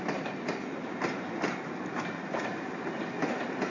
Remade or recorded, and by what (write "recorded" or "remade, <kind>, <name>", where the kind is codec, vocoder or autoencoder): recorded